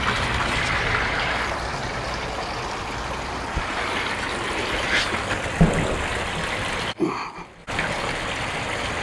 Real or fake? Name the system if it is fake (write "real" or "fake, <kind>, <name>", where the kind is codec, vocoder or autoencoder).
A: real